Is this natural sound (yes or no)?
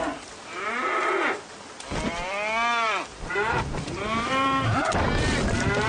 no